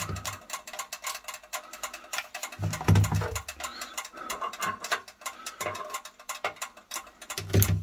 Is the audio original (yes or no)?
yes